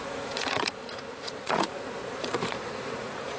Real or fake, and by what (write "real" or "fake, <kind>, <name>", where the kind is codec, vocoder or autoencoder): fake, vocoder, Vocos